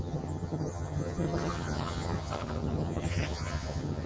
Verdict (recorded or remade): remade